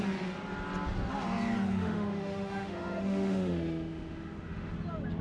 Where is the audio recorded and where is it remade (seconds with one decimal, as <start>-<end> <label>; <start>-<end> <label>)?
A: 0.0-1.7 recorded; 1.7-4.7 remade; 4.7-5.2 recorded